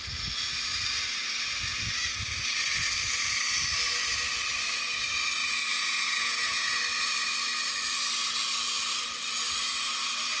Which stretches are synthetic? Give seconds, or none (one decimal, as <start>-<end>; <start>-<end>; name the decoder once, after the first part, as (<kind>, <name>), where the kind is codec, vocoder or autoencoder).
5.4-6.8 (vocoder, Vocos)